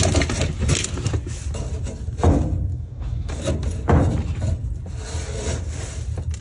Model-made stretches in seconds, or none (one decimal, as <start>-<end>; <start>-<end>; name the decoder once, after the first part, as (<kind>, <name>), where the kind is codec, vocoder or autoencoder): 2.7-3.4 (codec, DAC)